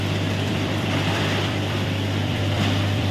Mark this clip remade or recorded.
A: remade